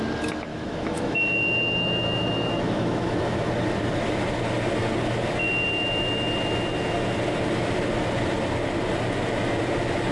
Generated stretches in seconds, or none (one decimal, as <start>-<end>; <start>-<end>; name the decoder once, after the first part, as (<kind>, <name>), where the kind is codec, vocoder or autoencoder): 0.5-3.5 (autoencoder, DAC-VAE)